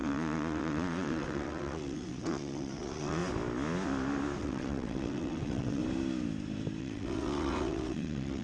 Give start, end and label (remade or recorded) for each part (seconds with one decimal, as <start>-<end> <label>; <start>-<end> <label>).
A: 0.0-3.2 remade; 3.2-4.4 recorded; 4.4-5.8 remade; 5.8-6.8 recorded; 6.8-8.4 remade